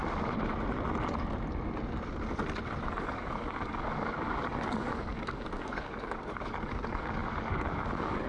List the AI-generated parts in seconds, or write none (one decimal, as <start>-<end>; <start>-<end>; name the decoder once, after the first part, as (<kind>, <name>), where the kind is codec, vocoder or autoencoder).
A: 2.9-8.3 (codec, DAC)

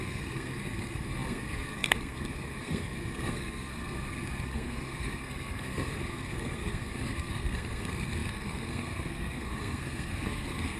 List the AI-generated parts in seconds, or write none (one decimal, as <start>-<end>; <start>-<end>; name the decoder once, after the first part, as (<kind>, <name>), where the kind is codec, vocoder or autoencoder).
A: 0.0-10.8 (codec, SNAC)

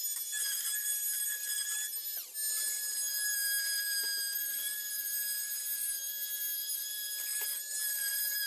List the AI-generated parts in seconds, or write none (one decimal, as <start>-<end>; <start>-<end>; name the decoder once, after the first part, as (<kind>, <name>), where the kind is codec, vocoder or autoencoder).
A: none

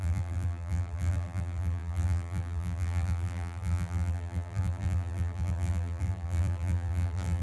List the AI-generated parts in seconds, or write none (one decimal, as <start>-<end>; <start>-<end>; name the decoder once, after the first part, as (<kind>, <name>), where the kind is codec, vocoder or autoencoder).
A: 0.0-7.4 (vocoder, BigVGAN v2)

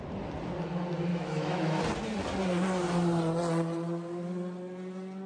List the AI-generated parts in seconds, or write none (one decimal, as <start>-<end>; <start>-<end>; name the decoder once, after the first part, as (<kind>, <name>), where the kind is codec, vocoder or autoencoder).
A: 1.1-1.8 (autoencoder, DAC-VAE)

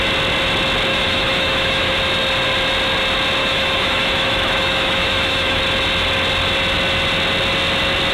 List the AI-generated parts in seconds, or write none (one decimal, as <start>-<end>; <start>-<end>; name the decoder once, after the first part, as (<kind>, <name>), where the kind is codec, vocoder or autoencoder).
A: 0.9-1.9 (autoencoder, DAC-VAE); 3.4-5.6

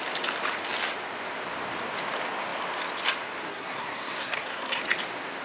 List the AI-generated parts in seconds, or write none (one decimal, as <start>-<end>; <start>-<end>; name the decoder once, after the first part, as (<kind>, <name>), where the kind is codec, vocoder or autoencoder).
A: 3.5-4.8 (codec, SNAC)

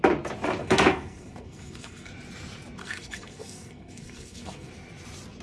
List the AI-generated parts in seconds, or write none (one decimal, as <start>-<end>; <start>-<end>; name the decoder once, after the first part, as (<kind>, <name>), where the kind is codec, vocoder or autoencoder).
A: 0.6-2.1 (codec, SNAC); 2.8-4.7